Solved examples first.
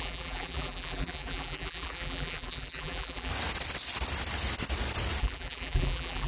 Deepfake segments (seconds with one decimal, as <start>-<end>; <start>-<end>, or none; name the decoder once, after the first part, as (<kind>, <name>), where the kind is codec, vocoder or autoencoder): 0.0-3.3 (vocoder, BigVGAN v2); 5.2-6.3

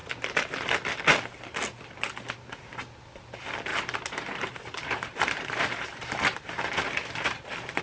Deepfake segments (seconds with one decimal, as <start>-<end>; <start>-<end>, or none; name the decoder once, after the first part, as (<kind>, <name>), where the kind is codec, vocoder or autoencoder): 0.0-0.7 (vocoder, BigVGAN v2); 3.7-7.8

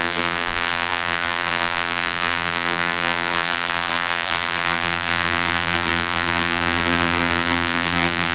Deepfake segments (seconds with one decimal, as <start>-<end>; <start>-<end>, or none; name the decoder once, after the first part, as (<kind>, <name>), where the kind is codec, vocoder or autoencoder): 0.0-8.3 (vocoder, BigVGAN v2)

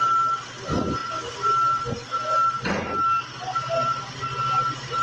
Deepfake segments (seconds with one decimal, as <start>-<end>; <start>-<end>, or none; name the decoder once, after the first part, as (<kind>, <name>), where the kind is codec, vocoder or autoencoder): none

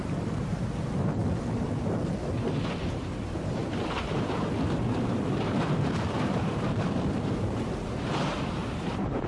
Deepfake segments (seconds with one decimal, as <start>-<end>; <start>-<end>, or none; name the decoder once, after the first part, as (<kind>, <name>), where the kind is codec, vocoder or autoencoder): 0.0-1.2 (vocoder, BigVGAN v2); 2.7-9.3